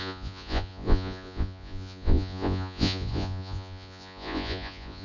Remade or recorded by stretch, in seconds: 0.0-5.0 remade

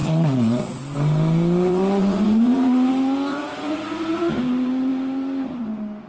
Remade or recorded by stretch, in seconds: 0.0-0.8 remade; 0.8-1.7 recorded; 1.7-2.9 remade; 2.9-3.3 recorded; 3.3-4.3 remade; 4.3-6.1 recorded

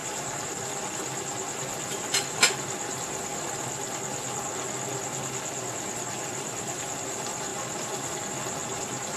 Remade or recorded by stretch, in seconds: 0.0-2.4 remade; 2.4-7.5 recorded; 7.5-8.1 remade; 8.1-9.2 recorded

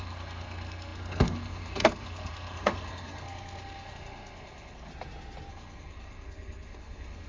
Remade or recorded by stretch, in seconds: 0.0-4.9 remade; 4.9-5.5 recorded; 5.5-7.3 remade

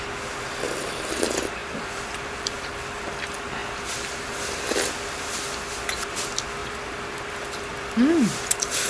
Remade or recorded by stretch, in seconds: 0.0-1.6 recorded; 1.6-3.1 remade; 3.1-6.6 recorded; 6.6-7.9 remade; 7.9-8.9 recorded

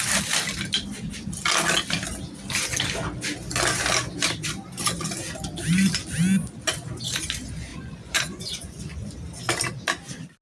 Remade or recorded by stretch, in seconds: 0.0-7.7 recorded; 7.7-9.1 remade; 9.1-10.4 recorded

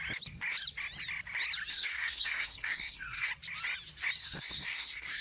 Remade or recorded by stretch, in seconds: 0.0-1.7 recorded; 1.7-3.3 remade; 3.3-4.2 recorded; 4.2-5.2 remade

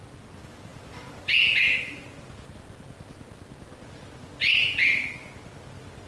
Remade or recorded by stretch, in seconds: 0.0-0.7 recorded; 0.7-1.3 remade; 1.3-6.1 recorded